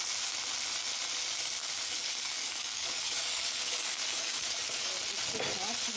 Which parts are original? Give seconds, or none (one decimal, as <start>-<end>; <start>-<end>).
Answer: 0.0-1.6; 4.9-6.0